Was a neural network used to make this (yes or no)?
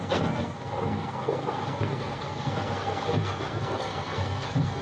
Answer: yes